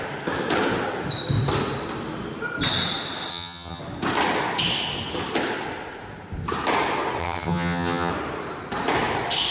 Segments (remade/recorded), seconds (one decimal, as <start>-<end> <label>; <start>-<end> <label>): 0.0-3.3 recorded; 3.3-3.8 remade; 3.8-7.2 recorded; 7.2-8.1 remade; 8.1-9.5 recorded